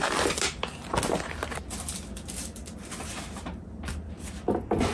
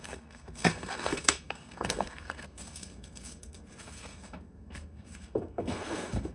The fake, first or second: second